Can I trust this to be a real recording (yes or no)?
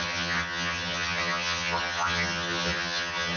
no